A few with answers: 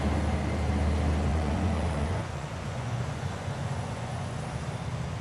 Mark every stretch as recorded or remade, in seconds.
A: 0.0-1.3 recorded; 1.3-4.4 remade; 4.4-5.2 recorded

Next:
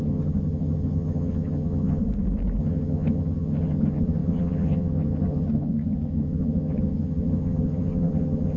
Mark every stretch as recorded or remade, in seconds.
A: 0.0-2.0 remade; 2.0-2.6 recorded; 2.6-8.6 remade

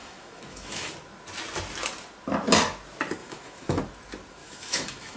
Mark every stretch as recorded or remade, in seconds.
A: 0.0-0.9 remade; 0.9-3.2 recorded; 3.2-3.8 remade; 3.8-4.4 recorded; 4.4-5.2 remade